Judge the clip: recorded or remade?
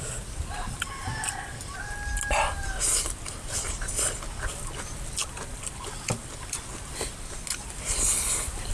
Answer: recorded